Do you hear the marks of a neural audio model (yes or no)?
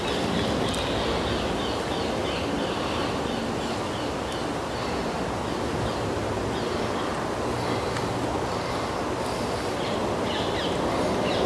no